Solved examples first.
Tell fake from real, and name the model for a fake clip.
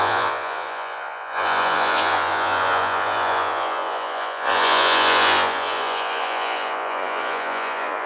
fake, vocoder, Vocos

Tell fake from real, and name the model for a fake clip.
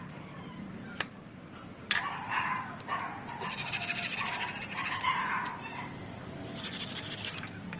fake, vocoder, BigVGAN v2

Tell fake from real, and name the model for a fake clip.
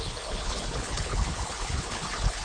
fake, codec, HILCodec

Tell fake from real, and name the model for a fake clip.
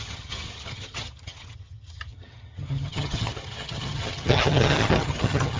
fake, vocoder, HiFi-GAN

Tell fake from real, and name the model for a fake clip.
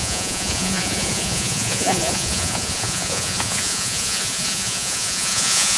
fake, vocoder, Vocos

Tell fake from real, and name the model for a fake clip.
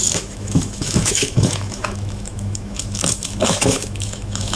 fake, autoencoder, DAC-VAE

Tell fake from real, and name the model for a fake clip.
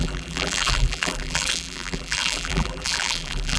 fake, vocoder, BigVGAN v2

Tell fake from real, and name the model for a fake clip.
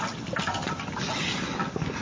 real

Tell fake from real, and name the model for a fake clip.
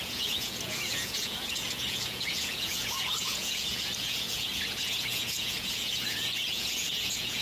fake, vocoder, Vocos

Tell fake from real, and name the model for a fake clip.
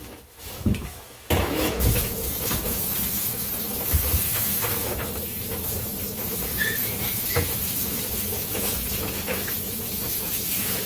fake, autoencoder, DAC-VAE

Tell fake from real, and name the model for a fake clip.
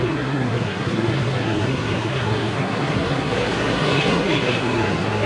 fake, codec, SNAC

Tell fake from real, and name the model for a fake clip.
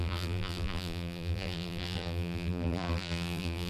fake, vocoder, BigVGAN v2